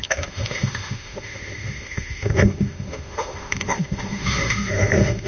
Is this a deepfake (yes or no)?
yes